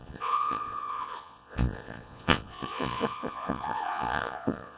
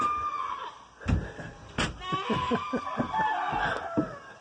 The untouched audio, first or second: second